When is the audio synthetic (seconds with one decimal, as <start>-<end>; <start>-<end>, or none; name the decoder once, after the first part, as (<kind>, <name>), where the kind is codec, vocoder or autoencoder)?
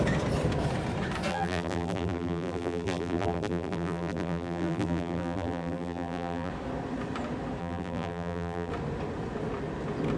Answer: 1.3-6.5 (vocoder, BigVGAN v2); 7.6-8.7